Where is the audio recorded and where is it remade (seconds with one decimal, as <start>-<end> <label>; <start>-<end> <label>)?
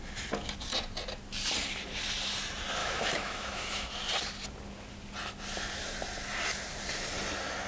0.0-2.8 recorded; 2.8-3.9 remade; 3.9-7.7 recorded